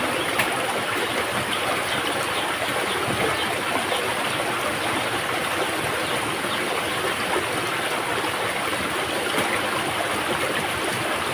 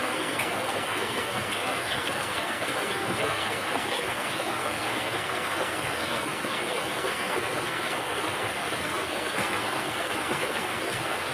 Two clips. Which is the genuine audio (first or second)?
first